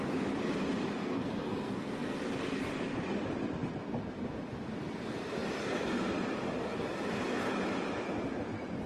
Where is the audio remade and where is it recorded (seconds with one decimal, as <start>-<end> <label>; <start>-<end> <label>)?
0.0-1.0 recorded; 1.0-2.2 remade; 2.2-8.9 recorded